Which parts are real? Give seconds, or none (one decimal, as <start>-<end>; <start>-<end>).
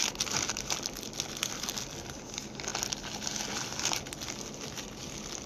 0.0-5.5